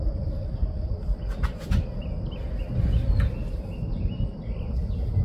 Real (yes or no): yes